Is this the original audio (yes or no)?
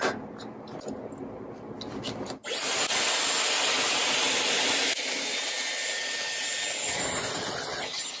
yes